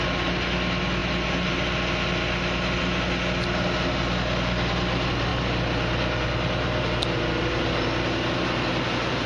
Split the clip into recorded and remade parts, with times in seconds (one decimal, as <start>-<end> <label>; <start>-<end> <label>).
0.0-9.3 recorded